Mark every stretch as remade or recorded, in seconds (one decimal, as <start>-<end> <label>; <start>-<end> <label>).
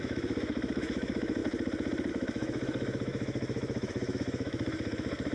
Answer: 0.0-1.4 remade; 1.4-2.1 recorded; 2.1-5.3 remade